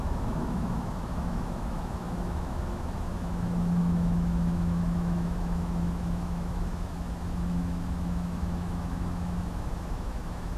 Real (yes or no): no